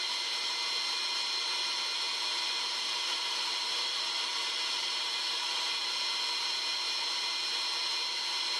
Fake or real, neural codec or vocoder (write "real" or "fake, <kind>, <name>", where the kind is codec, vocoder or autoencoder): real